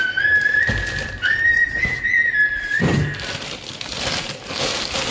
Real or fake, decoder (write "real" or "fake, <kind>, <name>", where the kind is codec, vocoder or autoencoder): real